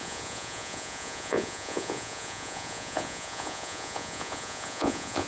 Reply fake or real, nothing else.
fake